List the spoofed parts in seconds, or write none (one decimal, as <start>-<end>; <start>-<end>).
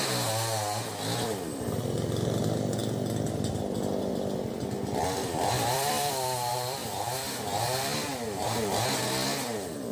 4.0-4.5; 5.2-6.1; 6.5-8.4